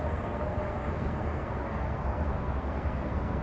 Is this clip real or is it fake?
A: fake